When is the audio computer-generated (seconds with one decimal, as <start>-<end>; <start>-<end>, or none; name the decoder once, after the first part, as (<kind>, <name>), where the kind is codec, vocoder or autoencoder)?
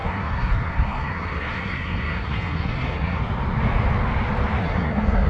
0.0-3.2 (codec, SNAC); 4.6-5.3